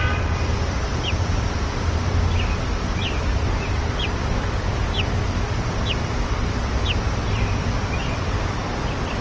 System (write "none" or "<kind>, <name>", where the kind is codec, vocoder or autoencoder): vocoder, BigVGAN v2